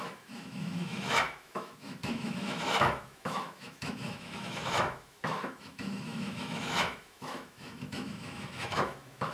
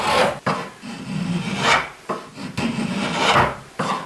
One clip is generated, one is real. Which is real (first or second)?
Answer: second